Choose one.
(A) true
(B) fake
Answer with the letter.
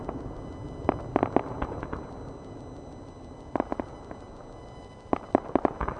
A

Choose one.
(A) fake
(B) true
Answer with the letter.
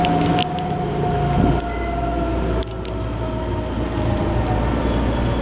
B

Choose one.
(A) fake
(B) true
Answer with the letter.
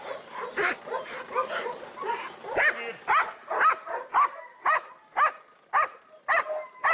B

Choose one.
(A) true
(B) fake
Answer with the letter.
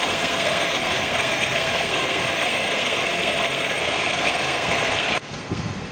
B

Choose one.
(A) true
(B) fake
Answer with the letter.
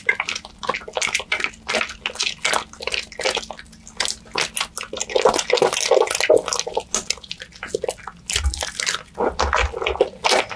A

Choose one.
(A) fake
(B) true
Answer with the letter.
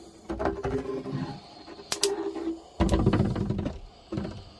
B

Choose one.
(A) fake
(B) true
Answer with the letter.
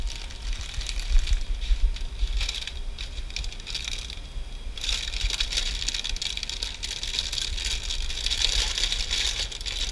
B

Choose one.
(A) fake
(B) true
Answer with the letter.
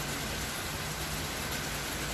B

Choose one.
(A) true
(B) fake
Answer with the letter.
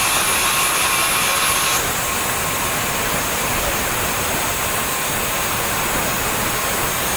A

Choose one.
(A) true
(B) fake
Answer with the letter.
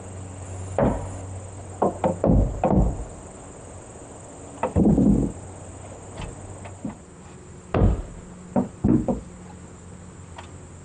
A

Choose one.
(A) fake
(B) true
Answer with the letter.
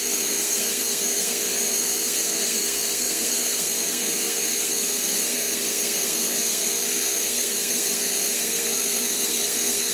A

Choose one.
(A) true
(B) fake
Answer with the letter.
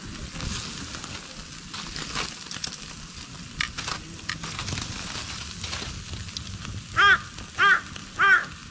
A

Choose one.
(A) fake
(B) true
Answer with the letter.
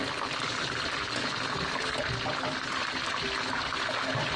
B